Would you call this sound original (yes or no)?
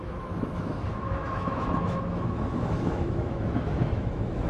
no